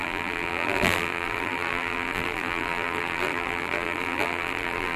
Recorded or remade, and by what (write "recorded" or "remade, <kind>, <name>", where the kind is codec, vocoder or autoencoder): remade, vocoder, BigVGAN v2